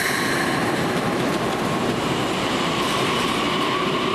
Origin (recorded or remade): remade